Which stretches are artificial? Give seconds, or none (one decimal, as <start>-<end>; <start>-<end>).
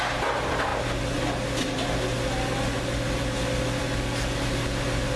none